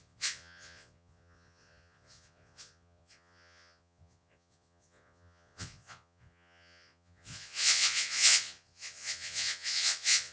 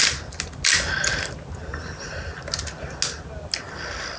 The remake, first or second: first